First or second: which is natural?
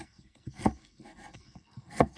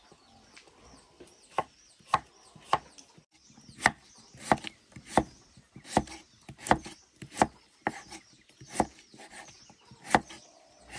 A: second